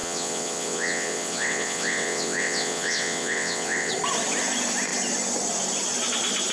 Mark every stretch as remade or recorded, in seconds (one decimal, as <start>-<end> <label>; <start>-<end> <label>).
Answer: 0.0-3.9 remade; 3.9-6.5 recorded